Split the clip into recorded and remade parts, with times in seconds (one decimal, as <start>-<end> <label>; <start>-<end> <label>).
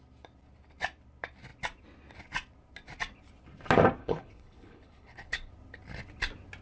0.0-4.0 recorded; 4.0-5.5 remade; 5.5-6.6 recorded